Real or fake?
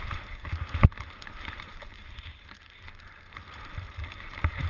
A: fake